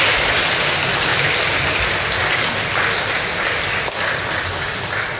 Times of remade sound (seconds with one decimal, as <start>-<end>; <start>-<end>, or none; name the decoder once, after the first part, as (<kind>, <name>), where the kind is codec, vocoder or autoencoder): none